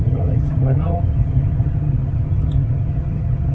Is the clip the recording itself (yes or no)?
no